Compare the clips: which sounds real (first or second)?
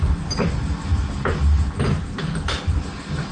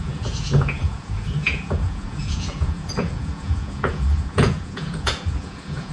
first